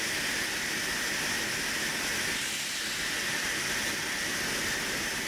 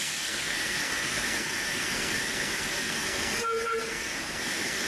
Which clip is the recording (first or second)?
first